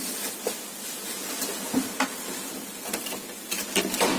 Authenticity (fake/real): real